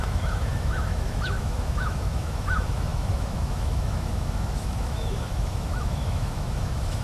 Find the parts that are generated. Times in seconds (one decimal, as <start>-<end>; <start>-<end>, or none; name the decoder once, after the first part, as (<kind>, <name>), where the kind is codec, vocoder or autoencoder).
0.0-7.0 (autoencoder, DAC-VAE)